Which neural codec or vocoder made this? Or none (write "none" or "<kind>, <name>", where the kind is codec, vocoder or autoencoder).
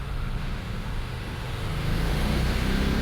autoencoder, DAC-VAE